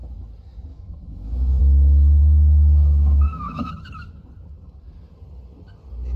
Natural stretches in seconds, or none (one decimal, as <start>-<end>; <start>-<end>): 0.0-0.7; 1.6-2.2; 3.7-6.2